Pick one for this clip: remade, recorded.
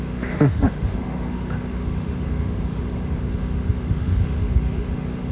remade